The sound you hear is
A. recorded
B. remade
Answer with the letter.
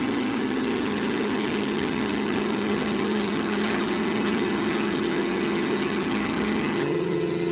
B